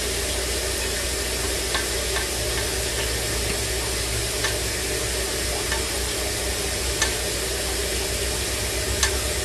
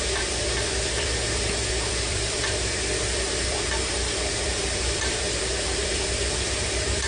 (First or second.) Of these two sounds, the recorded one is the first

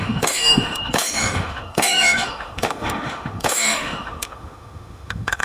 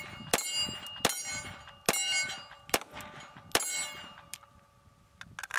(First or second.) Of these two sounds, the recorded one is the second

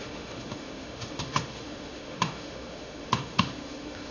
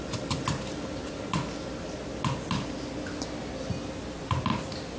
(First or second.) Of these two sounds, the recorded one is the second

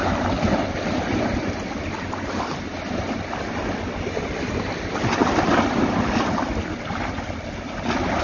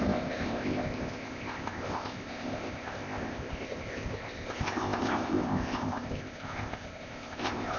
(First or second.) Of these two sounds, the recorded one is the first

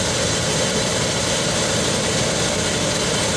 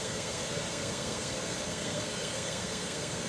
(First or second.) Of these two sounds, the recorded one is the first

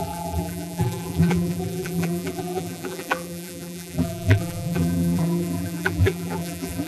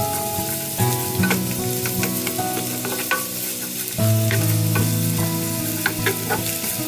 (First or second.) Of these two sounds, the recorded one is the second